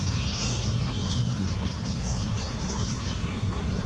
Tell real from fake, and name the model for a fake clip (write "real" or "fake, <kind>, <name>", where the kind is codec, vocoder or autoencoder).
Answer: fake, codec, SNAC